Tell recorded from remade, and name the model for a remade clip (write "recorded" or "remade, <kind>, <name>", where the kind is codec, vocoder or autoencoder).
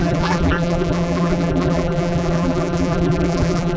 remade, vocoder, BigVGAN v2